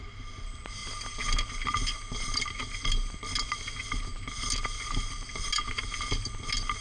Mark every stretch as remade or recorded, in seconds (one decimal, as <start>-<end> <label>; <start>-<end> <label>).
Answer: 0.0-6.8 recorded